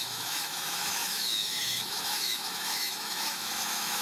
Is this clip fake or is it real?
fake